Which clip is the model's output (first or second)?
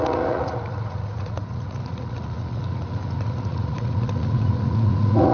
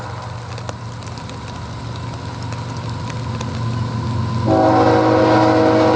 first